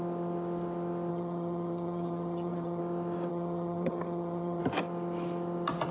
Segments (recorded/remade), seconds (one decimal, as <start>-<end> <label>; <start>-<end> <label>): 0.0-1.1 recorded; 1.1-2.8 remade; 2.8-3.3 recorded; 3.3-4.6 remade; 4.6-5.9 recorded